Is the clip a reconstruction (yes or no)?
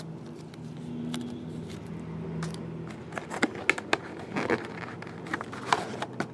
no